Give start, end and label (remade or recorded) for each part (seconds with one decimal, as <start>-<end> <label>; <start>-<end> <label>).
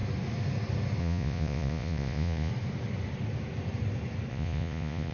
0.0-1.0 recorded; 1.0-2.5 remade; 2.5-4.3 recorded; 4.3-5.1 remade